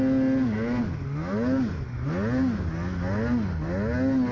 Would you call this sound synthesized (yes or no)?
no